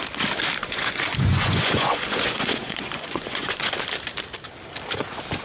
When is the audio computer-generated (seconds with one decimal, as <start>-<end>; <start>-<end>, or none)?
0.6-3.7